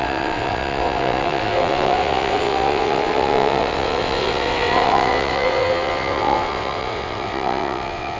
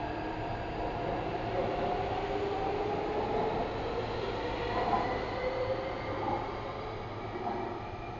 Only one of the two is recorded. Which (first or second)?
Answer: second